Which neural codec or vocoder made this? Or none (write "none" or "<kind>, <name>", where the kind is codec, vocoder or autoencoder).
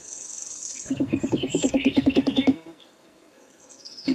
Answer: codec, SNAC